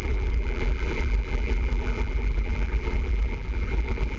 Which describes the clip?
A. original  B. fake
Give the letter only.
B